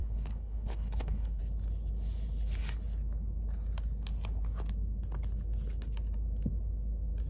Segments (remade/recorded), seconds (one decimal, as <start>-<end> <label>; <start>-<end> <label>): 0.0-1.4 remade; 1.4-7.3 recorded